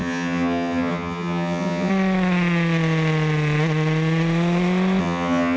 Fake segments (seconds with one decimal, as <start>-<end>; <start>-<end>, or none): 0.0-1.9; 5.0-5.6